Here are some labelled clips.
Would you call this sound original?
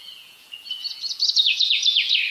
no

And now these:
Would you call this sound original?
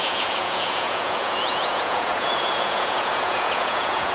no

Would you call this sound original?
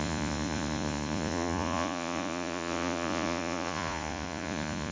no